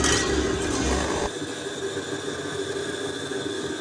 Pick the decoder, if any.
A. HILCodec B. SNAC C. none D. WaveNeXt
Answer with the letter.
C